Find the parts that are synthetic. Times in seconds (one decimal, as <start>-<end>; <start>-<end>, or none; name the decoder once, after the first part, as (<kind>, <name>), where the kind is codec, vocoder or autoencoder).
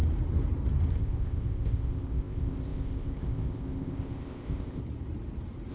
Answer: 0.9-4.8 (codec, ZipCodec)